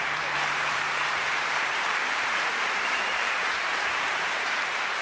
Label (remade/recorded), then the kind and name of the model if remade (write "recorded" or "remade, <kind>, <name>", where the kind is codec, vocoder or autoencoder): remade, vocoder, BigVGAN v2